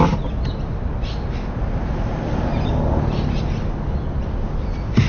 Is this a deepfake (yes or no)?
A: no